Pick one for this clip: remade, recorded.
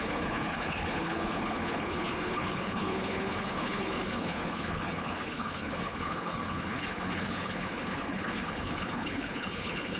remade